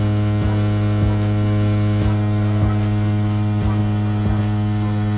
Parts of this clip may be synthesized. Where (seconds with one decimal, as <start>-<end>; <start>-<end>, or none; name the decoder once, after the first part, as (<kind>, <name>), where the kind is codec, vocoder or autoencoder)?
none